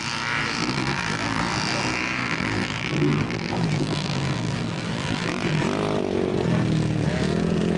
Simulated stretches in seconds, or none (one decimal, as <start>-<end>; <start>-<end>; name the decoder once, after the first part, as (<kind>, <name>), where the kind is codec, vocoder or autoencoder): 0.6-1.4 (vocoder, BigVGAN v2); 2.2-5.6